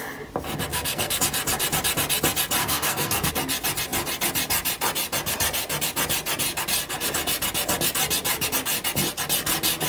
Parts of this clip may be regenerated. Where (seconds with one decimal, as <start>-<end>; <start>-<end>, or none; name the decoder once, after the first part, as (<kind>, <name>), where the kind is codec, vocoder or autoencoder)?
0.7-1.2 (codec, SNAC); 2.6-3.3